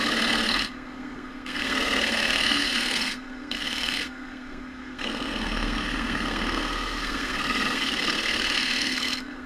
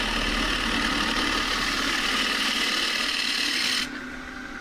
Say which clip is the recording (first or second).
second